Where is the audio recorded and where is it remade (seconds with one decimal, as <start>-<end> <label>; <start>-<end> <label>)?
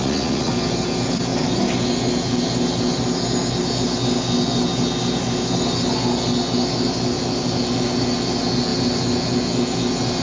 0.0-0.5 remade; 0.5-10.2 recorded